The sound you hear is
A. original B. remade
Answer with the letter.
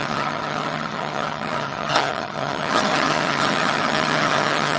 B